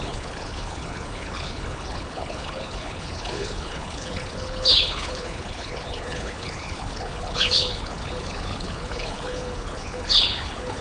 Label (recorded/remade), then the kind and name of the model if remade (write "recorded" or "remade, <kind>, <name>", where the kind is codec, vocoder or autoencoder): remade, codec, HILCodec